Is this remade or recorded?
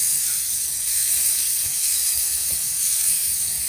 remade